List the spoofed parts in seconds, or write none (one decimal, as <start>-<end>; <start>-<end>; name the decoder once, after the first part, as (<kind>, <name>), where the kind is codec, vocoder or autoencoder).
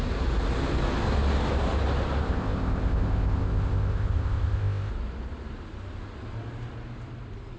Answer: 2.2-4.9 (codec, ZipCodec)